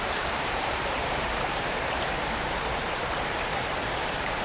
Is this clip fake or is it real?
fake